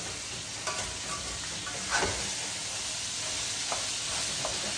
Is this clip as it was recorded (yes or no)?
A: yes